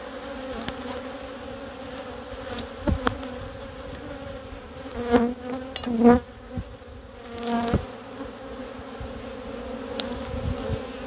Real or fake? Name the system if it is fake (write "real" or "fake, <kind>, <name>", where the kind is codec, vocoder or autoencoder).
real